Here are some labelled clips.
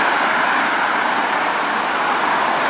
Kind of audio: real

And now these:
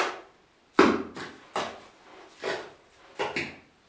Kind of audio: real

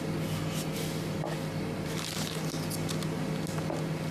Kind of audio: real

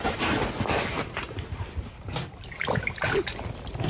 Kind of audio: real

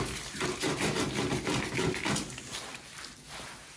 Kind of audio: real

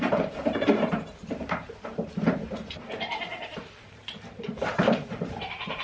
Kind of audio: fake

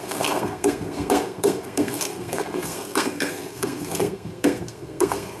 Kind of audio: fake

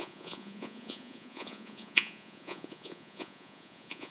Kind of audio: fake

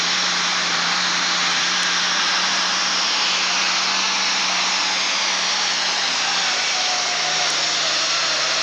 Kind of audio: real